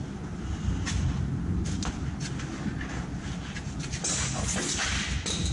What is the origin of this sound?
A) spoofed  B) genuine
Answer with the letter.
B